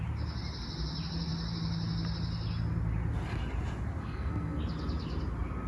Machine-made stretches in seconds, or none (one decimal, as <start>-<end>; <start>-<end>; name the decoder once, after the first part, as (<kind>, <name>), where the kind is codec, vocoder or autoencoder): 4.0-4.6 (codec, SNAC)